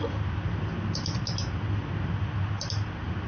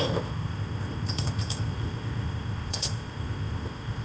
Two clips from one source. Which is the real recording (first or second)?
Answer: first